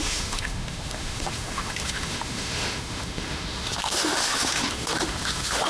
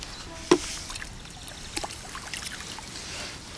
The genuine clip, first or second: second